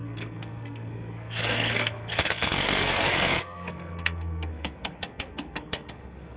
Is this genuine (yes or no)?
no